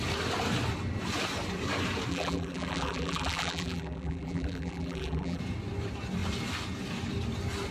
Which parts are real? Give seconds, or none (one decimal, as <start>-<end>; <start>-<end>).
0.0-2.1; 5.4-7.7